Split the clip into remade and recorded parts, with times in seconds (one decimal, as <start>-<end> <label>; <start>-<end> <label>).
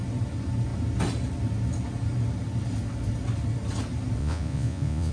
0.0-4.2 recorded; 4.2-5.1 remade